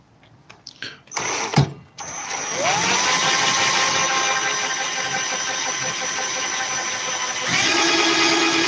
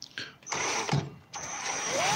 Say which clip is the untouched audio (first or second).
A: first